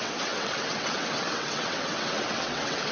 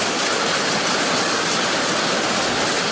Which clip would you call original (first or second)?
second